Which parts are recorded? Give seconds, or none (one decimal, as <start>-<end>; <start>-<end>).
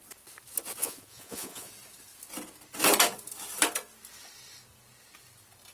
0.0-0.8; 1.7-5.7